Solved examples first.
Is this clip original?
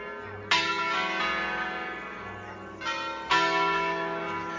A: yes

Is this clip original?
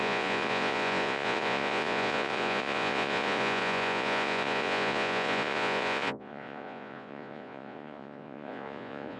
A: no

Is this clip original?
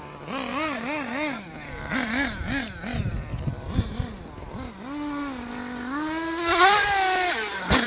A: yes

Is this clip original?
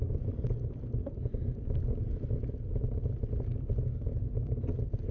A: yes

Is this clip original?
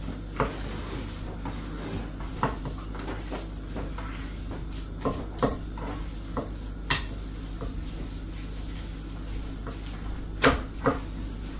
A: yes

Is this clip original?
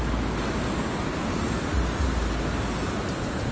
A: yes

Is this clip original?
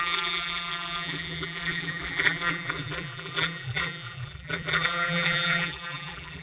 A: no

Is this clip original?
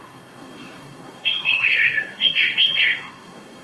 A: no